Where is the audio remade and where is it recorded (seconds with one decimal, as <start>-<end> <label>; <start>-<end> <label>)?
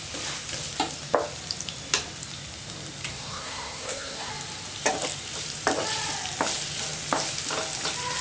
0.0-3.1 recorded; 3.1-4.3 remade; 4.3-8.2 recorded